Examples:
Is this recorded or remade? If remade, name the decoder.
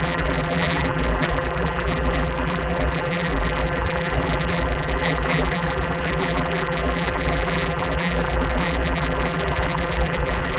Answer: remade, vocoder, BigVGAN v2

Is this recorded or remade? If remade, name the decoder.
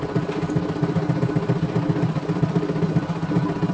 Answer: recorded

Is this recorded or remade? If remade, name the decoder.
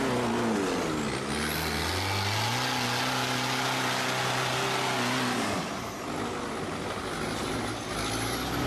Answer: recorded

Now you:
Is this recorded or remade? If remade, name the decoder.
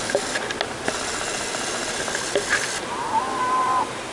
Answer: recorded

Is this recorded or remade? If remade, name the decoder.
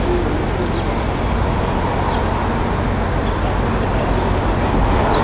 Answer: recorded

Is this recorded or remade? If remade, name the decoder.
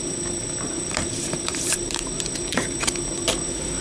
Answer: remade, vocoder, BigVGAN v2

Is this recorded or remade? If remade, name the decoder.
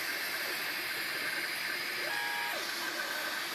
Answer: recorded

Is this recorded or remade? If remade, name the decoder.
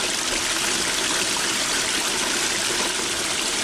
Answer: remade, vocoder, BigVGAN v2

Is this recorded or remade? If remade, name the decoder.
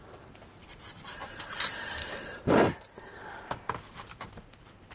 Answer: remade, vocoder, BigVGAN v2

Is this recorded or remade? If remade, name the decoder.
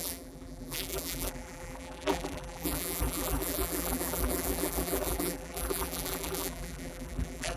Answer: remade, vocoder, BigVGAN v2